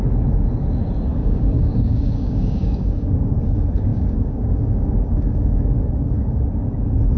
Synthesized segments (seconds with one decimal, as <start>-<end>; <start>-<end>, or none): 1.1-3.3; 3.9-6.4